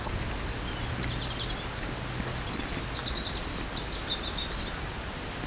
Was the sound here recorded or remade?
recorded